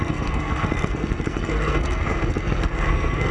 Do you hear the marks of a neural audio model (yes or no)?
yes